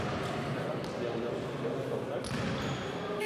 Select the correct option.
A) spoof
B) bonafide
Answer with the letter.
B